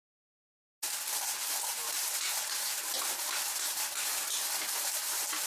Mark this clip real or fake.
real